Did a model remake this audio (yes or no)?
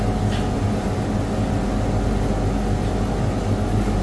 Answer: no